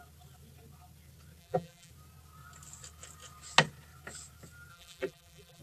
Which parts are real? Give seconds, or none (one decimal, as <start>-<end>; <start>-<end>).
0.0-1.4; 1.9-4.7